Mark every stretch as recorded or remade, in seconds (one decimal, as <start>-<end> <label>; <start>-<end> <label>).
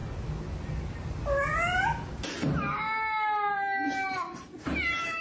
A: 0.0-5.2 recorded